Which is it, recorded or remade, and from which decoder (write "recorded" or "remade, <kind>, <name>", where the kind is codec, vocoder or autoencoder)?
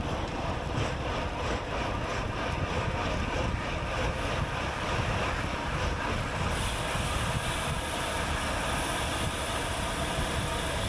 recorded